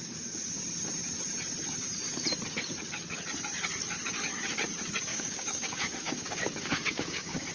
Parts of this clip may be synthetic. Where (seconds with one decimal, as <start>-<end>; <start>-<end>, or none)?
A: 5.1-7.5